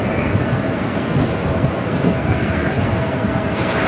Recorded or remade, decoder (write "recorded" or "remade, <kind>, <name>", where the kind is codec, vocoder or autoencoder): remade, codec, SNAC